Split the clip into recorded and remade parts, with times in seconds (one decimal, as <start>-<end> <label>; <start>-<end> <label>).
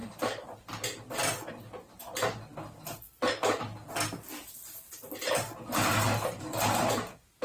0.0-7.4 recorded